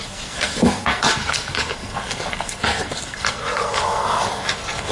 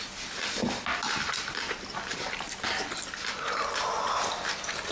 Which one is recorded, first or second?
second